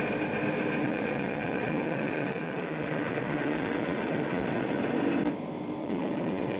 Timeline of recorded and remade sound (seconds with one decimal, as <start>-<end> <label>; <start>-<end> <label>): 0.0-0.8 recorded; 0.8-4.8 remade; 4.8-5.8 recorded; 5.8-6.6 remade